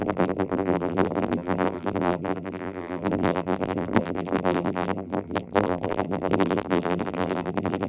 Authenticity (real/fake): fake